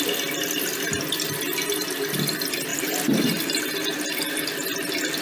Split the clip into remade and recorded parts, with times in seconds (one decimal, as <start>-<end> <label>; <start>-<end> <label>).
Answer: 0.0-2.7 recorded; 2.7-3.7 remade; 3.7-5.2 recorded